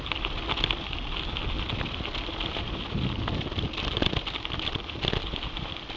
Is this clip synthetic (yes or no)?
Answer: no